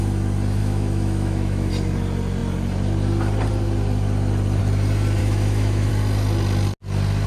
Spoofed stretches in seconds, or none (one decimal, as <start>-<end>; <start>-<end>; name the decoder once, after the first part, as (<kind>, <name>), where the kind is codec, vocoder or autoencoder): 0.6-1.7 (autoencoder, DAC-VAE); 5.2-5.9